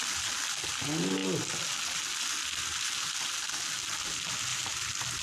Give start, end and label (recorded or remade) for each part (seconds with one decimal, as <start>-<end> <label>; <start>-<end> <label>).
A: 0.0-4.5 recorded; 4.5-5.2 remade